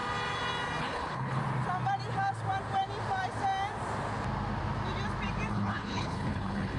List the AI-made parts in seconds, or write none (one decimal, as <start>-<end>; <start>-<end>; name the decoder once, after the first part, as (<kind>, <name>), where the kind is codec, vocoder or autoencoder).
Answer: 0.8-1.4 (codec, HILCodec); 5.5-6.8